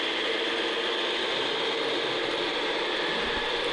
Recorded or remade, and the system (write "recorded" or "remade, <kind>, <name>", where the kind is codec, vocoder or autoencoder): recorded